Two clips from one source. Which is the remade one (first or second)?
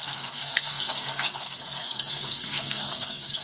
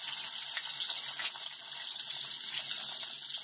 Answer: first